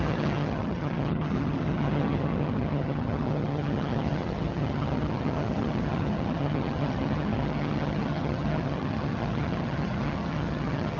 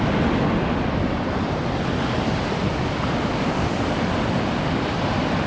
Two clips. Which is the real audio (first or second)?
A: second